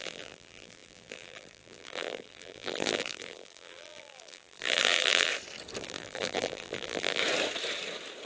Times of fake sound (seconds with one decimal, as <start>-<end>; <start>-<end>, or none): 0.0-5.3; 5.8-7.2